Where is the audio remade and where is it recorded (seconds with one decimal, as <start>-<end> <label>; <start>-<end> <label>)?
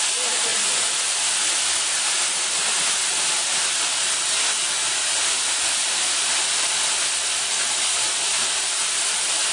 0.0-0.5 remade; 0.5-1.3 recorded; 1.3-3.5 remade; 3.5-5.8 recorded; 5.8-9.5 remade